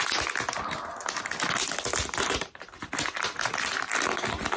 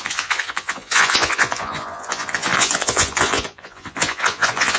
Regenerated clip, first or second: second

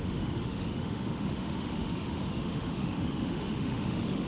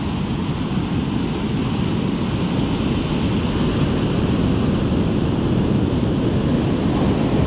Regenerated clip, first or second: first